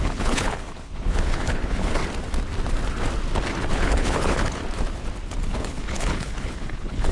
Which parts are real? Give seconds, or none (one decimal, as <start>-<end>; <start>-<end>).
2.0-3.7; 4.6-5.5